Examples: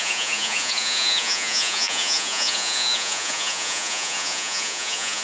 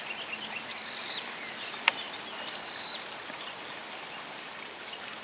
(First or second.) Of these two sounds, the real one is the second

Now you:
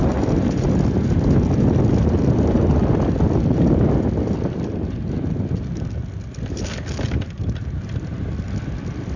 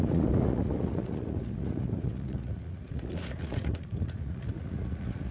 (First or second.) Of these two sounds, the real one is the first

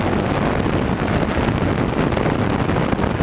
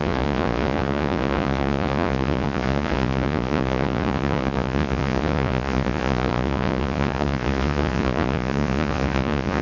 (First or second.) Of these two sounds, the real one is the first